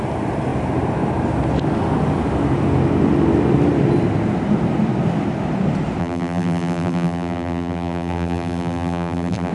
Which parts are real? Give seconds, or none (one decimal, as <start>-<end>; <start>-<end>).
0.0-6.0

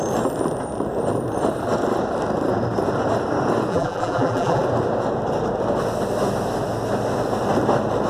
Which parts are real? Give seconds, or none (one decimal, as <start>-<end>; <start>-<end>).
0.0-3.7; 4.6-8.1